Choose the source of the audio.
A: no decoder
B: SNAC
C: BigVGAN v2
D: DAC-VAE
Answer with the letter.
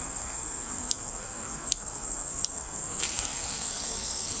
B